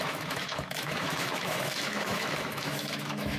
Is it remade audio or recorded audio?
remade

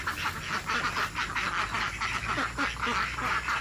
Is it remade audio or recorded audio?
recorded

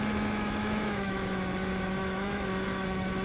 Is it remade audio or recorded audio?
remade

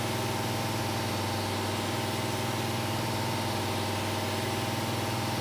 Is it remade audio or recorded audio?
recorded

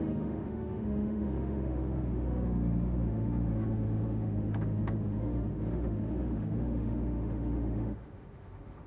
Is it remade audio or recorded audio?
remade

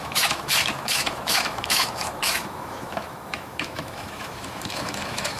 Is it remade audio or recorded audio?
remade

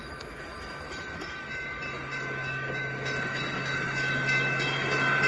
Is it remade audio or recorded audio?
remade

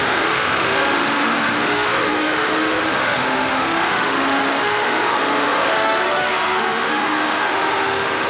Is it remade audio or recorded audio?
remade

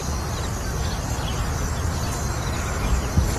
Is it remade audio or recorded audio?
recorded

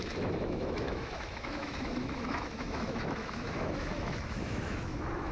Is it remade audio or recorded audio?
remade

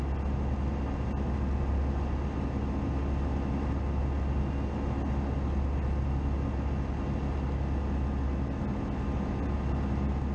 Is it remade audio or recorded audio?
recorded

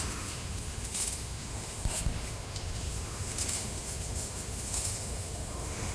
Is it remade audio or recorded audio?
remade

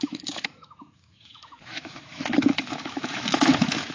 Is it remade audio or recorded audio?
remade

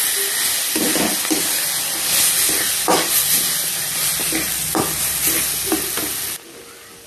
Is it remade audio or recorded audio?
recorded